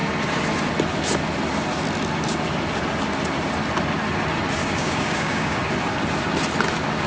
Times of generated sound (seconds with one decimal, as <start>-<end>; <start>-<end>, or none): 4.6-5.6